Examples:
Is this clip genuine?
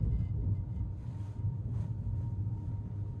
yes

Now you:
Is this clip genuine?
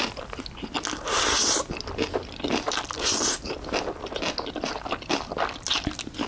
yes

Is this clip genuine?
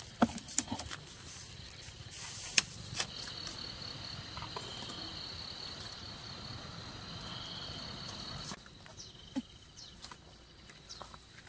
yes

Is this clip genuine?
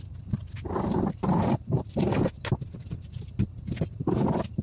no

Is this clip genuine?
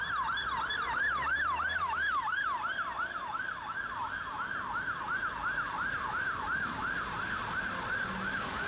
yes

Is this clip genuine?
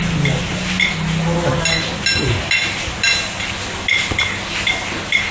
yes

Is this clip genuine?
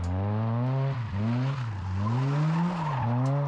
yes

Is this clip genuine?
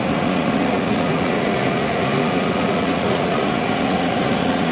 no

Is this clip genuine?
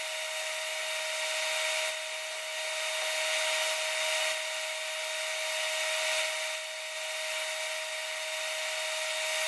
yes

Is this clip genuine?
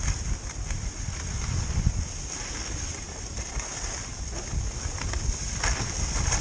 yes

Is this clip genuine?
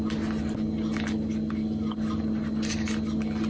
yes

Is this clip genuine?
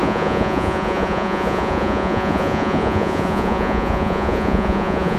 no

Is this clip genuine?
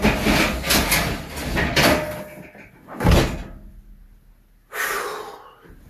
yes